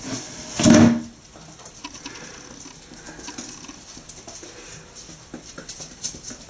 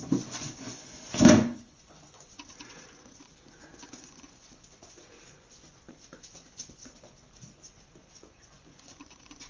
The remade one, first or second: second